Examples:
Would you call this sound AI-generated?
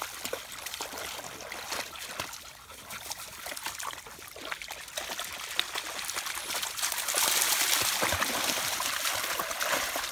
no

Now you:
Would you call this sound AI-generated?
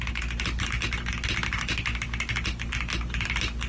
no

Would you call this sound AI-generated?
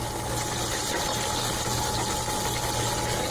no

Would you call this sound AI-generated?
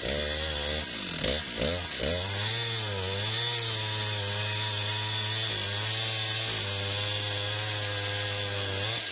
no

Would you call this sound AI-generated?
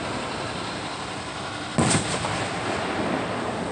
no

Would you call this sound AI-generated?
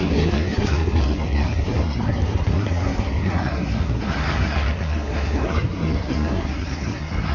yes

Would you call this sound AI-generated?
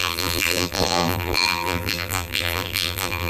yes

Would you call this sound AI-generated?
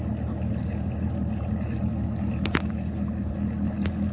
no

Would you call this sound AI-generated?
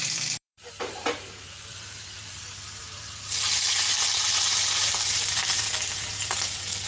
yes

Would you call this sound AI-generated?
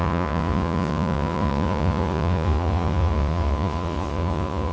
yes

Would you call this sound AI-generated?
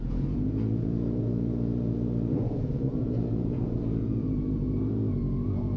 yes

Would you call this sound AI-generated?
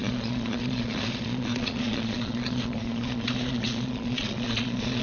yes